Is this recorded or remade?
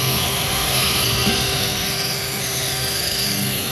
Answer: remade